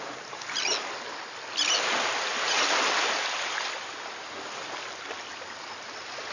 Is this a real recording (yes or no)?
yes